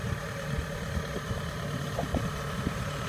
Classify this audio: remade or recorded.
recorded